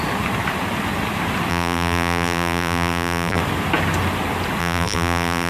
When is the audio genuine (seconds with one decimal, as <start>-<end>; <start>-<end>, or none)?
0.0-1.5; 3.4-4.6